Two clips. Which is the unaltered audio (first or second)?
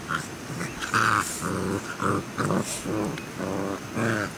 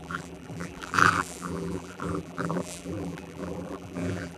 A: first